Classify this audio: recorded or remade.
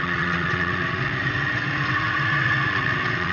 remade